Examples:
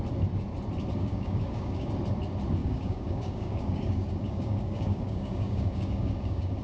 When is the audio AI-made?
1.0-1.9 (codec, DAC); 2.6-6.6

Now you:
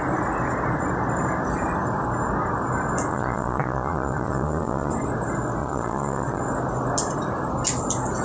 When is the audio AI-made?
3.1-4.9 (vocoder, Vocos); 5.6-6.4

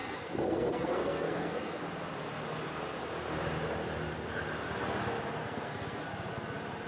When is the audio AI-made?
0.0-1.8 (codec, SNAC); 5.4-6.0

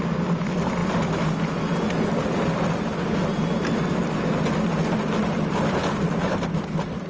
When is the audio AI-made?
5.8-6.5 (vocoder, BigVGAN v2)